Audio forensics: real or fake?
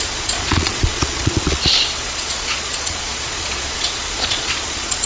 fake